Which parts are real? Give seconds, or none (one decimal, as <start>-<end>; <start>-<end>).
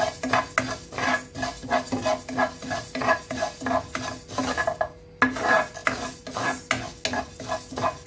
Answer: 0.0-8.1